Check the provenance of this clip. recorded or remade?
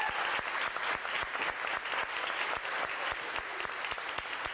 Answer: recorded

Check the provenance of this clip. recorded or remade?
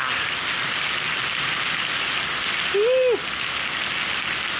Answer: recorded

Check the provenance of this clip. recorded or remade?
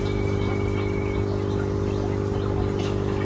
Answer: recorded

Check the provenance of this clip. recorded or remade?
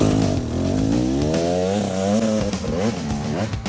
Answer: recorded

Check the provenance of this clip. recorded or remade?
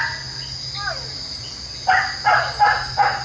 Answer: recorded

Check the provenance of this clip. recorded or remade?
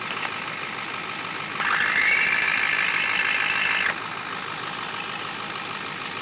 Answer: recorded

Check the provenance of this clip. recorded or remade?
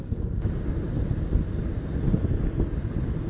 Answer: recorded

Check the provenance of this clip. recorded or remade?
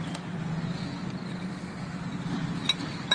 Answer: recorded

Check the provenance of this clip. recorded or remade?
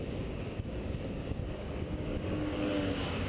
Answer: remade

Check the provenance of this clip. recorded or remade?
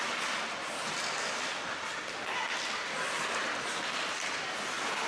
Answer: recorded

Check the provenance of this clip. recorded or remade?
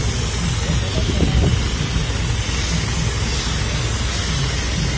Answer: recorded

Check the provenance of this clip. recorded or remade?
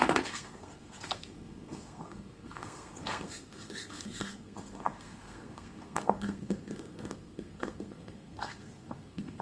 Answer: remade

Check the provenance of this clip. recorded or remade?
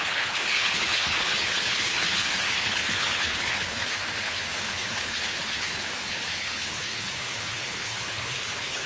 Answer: remade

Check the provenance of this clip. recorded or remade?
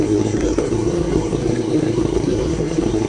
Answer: remade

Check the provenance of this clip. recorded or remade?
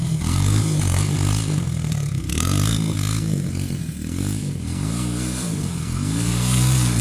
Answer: remade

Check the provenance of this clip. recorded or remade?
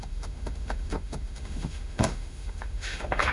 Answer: remade